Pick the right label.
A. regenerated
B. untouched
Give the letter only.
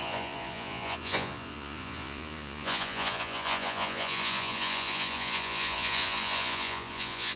A